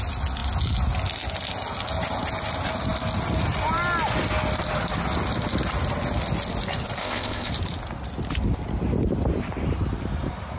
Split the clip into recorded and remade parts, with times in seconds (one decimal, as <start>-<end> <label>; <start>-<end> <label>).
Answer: 0.0-7.0 recorded; 7.0-7.5 remade; 7.5-10.6 recorded